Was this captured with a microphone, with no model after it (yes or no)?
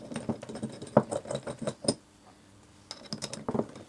yes